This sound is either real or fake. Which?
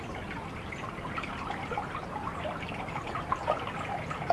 real